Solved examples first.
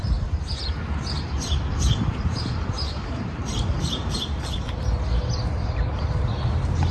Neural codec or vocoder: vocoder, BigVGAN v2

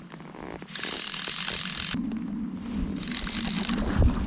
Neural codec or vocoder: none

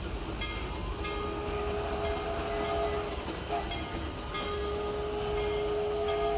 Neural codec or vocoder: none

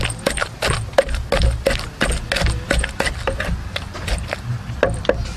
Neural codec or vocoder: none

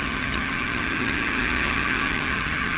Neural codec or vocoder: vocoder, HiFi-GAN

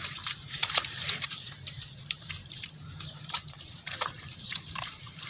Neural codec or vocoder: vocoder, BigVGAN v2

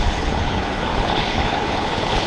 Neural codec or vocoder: codec, HILCodec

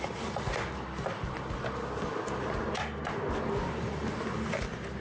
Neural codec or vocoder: none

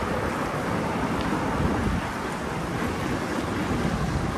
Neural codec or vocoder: none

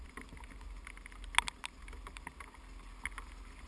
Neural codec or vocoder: none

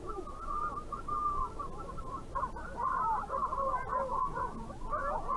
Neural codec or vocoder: none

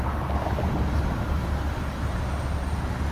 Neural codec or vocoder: none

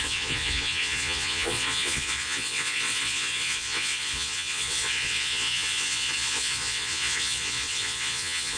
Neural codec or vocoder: vocoder, Vocos